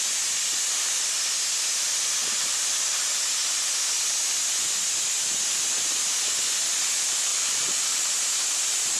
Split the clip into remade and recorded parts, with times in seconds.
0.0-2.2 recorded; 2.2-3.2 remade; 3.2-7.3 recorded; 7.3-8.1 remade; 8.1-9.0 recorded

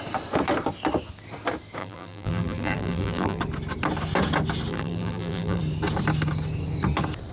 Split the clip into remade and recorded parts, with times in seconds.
0.0-1.8 recorded; 1.8-3.4 remade; 3.4-4.7 recorded; 4.7-5.6 remade; 5.6-7.3 recorded

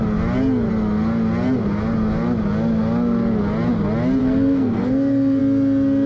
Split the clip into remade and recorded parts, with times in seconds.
0.0-4.2 recorded; 4.2-5.4 remade; 5.4-6.1 recorded

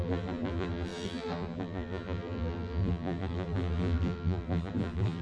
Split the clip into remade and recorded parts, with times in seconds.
0.0-5.2 remade

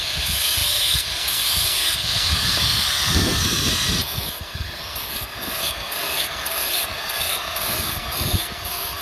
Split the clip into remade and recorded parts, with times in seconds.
0.0-9.0 remade

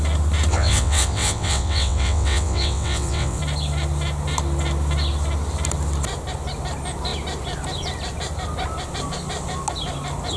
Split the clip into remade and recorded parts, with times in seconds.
0.0-0.5 recorded; 0.5-3.4 remade; 3.4-10.4 recorded

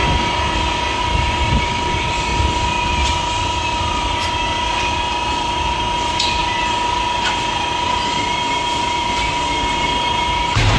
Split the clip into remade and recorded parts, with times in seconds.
0.0-1.0 recorded; 1.0-10.8 remade

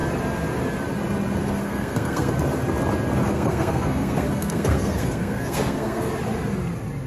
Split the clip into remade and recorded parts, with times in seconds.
0.0-1.4 recorded; 1.4-2.3 remade; 2.3-3.3 recorded; 3.3-6.1 remade; 6.1-7.1 recorded